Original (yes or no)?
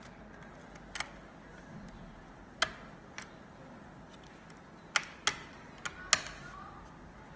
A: yes